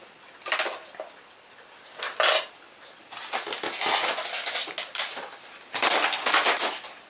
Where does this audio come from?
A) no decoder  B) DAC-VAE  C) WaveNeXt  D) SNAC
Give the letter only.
A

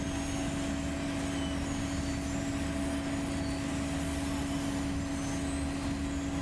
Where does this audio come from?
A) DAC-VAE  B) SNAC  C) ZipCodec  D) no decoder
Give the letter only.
D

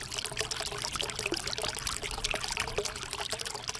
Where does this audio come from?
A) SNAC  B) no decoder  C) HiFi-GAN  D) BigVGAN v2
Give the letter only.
B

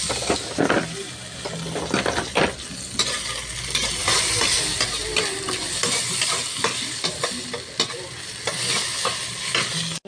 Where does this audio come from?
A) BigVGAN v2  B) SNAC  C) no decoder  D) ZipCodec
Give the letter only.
C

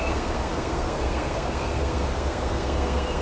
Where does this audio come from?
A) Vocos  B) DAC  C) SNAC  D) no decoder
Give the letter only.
C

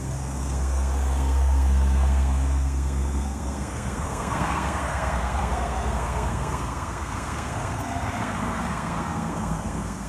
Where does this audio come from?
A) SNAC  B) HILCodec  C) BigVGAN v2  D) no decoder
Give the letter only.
A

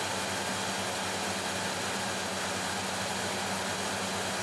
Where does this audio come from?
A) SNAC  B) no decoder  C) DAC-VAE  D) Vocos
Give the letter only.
B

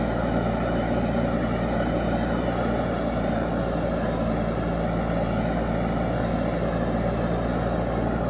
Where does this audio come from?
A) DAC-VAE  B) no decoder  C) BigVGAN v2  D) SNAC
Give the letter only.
B